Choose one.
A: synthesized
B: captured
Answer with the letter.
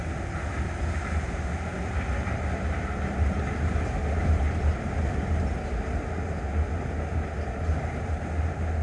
B